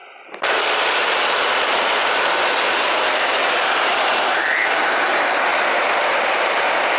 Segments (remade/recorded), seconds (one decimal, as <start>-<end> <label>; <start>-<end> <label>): 0.0-5.5 remade; 5.5-6.1 recorded; 6.1-7.0 remade